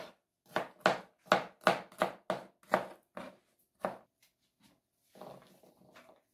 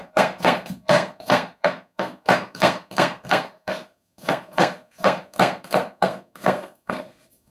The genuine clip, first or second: first